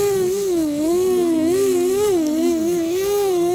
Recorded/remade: remade